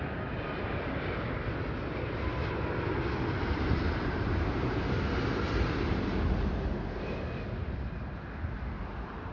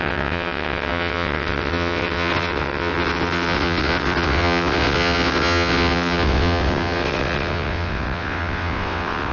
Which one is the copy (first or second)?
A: second